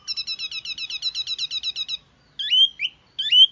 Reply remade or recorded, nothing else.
recorded